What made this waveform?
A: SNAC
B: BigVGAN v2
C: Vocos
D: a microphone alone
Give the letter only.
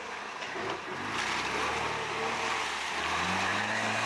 D